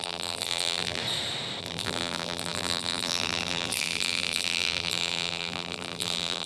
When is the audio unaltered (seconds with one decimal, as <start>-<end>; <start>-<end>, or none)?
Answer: 1.0-1.6